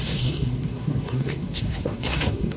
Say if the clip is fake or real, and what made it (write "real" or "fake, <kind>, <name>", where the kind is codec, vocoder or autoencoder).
fake, codec, SNAC